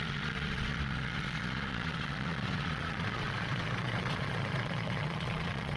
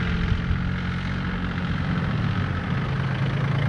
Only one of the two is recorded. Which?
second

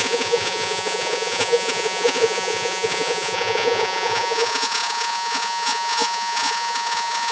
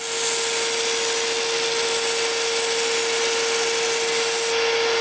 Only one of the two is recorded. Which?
second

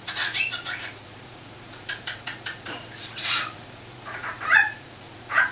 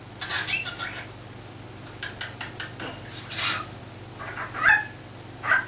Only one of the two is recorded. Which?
second